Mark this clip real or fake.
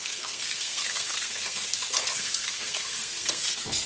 fake